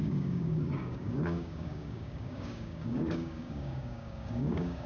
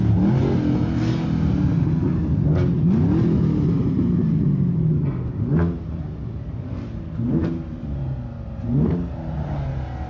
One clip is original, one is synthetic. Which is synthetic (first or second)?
first